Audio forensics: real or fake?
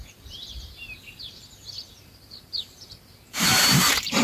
fake